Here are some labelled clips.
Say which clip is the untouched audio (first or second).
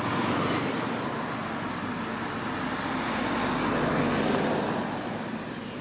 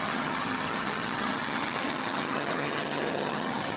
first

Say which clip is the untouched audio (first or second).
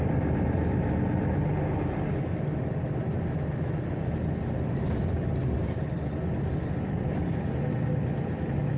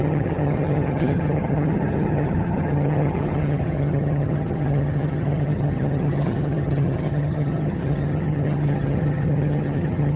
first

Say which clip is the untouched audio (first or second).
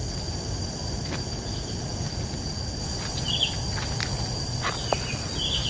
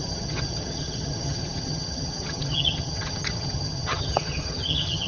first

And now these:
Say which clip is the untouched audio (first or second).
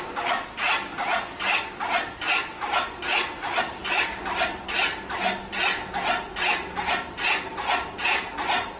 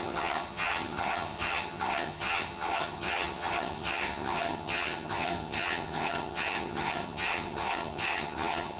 first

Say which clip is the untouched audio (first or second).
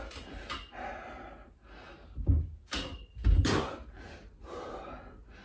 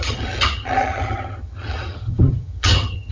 first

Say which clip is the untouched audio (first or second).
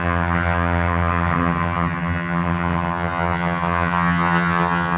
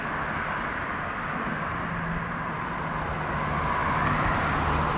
second